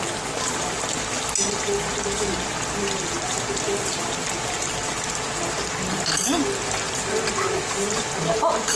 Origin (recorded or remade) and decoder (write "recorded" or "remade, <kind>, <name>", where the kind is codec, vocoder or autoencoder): recorded